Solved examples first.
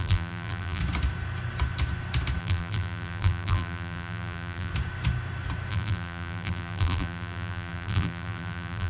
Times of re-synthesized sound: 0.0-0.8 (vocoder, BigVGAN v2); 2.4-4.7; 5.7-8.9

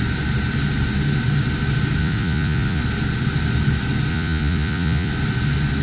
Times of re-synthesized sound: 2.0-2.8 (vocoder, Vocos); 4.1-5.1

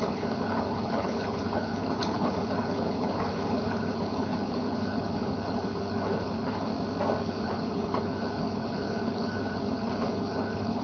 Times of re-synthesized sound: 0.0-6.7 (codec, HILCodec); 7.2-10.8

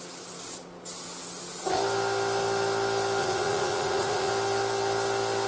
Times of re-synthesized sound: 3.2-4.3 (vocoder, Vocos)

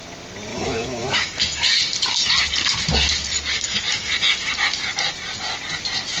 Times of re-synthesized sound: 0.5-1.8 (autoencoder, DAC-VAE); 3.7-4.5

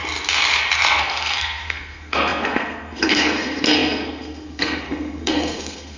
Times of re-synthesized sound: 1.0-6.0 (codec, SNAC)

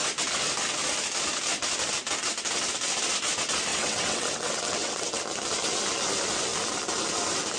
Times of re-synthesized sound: 3.7-5.2 (vocoder, WaveNeXt)

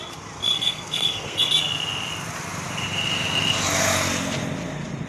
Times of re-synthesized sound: 0.4-1.5 (codec, SNAC)